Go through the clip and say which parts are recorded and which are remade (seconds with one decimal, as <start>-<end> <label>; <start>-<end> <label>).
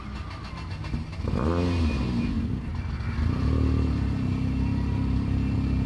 0.0-5.9 recorded